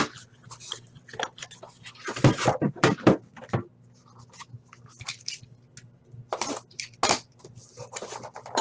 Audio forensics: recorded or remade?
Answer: recorded